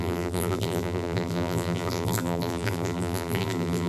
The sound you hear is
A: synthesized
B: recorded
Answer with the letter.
A